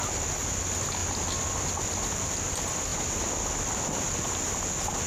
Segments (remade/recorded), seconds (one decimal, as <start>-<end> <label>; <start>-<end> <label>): 0.0-5.1 recorded